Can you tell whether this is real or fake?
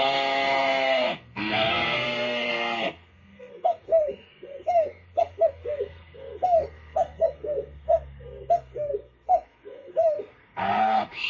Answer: fake